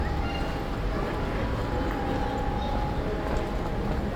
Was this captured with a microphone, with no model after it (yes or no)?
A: yes